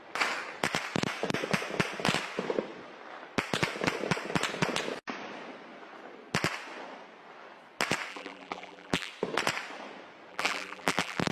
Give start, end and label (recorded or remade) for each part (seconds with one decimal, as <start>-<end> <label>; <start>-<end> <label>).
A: 0.0-8.1 recorded; 8.1-9.1 remade; 9.1-10.3 recorded; 10.3-11.3 remade